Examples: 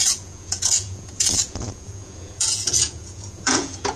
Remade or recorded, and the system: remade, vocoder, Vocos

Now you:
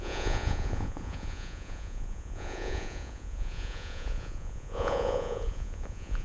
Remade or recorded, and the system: remade, vocoder, Vocos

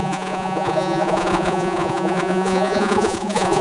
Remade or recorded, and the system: remade, vocoder, Vocos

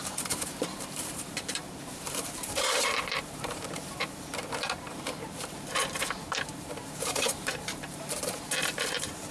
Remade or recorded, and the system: remade, vocoder, BigVGAN v2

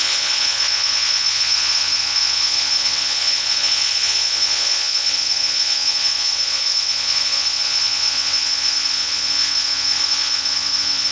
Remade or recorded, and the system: remade, vocoder, WaveNeXt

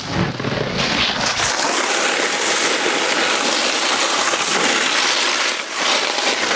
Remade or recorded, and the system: recorded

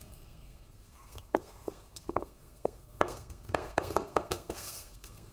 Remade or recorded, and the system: remade, codec, SNAC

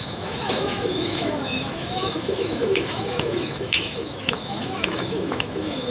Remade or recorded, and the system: remade, autoencoder, DAC-VAE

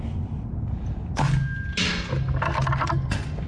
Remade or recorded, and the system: recorded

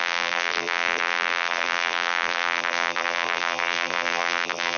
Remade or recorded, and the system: remade, vocoder, BigVGAN v2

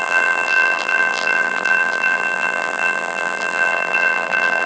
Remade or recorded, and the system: remade, vocoder, BigVGAN v2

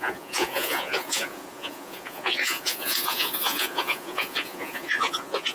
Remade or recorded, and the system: remade, vocoder, Vocos